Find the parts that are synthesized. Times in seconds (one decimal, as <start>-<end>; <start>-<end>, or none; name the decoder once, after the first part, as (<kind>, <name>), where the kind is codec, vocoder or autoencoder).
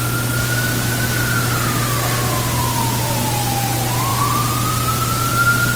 none